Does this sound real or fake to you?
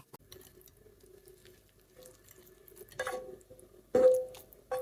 real